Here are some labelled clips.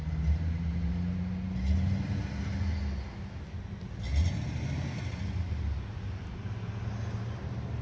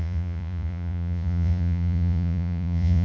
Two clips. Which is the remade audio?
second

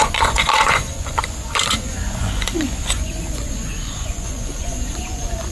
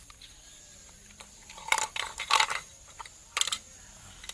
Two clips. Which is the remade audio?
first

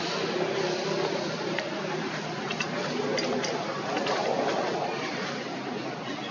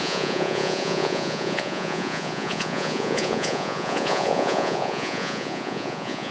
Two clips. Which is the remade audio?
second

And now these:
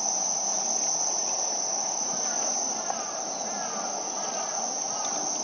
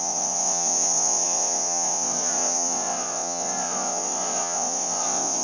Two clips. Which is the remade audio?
second